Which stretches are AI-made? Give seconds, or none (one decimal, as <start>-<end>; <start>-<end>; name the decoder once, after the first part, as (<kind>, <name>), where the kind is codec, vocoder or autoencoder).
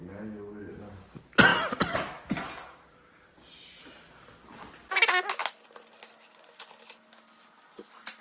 1.5-3.8 (vocoder, BigVGAN v2)